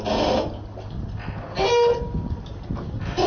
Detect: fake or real real